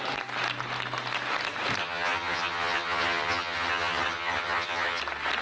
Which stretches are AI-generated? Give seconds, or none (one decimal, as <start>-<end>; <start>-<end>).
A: 1.8-5.0